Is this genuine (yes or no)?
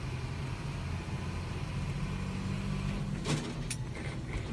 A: yes